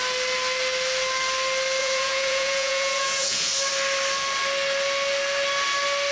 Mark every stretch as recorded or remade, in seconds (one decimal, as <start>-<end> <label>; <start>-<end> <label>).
0.0-1.8 recorded; 1.8-3.5 remade; 3.5-6.1 recorded